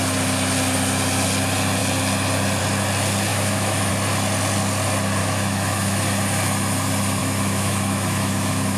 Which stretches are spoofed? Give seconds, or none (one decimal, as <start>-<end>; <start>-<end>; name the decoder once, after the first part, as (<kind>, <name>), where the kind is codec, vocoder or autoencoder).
3.3-3.9 (autoencoder, DAC-VAE); 5.2-6.0; 7.2-8.8